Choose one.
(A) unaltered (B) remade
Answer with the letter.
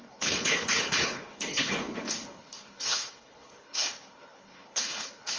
B